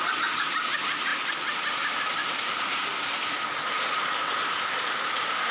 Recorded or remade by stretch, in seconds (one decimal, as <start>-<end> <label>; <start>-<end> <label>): 0.0-5.5 recorded